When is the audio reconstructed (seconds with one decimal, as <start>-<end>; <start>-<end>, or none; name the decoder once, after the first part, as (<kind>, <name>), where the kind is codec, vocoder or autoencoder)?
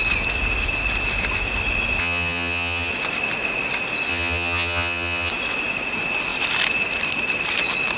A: 2.0-2.9 (vocoder, HiFi-GAN); 4.1-5.3